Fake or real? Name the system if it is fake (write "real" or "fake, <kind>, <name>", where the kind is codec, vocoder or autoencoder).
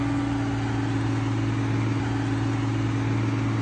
real